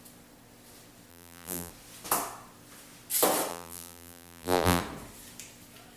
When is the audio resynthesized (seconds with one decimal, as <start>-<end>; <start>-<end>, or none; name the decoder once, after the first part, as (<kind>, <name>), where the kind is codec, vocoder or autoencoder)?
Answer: 1.1-1.7 (vocoder, BigVGAN v2); 3.5-4.8